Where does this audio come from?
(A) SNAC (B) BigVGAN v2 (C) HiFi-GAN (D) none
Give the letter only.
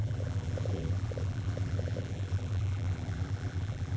B